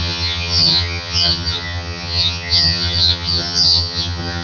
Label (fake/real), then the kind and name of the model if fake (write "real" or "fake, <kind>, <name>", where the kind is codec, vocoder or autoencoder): fake, vocoder, HiFi-GAN